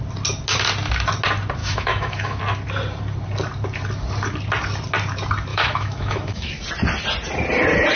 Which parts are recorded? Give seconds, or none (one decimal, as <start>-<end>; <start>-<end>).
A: 0.0-1.6; 2.4-5.5; 6.5-8.0